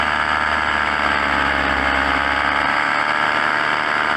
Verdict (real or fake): real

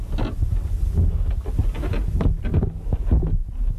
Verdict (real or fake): real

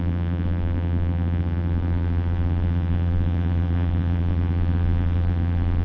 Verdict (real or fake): fake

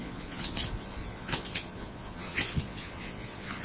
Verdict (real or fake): fake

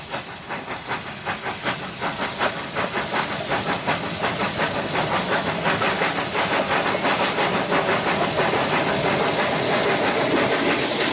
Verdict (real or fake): real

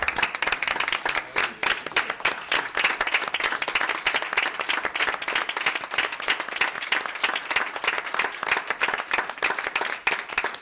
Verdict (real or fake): real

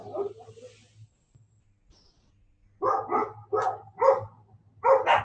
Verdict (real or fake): real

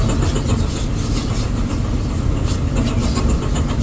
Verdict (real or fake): real